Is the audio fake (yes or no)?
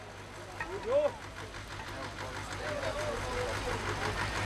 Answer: no